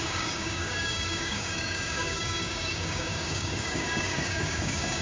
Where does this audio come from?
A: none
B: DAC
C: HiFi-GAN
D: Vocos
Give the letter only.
B